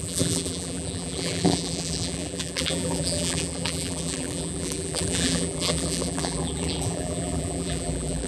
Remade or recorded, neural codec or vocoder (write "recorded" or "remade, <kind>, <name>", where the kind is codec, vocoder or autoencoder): remade, vocoder, BigVGAN v2